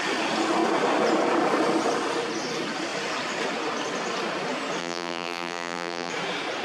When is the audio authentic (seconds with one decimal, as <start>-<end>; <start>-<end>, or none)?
0.0-4.8; 6.1-6.6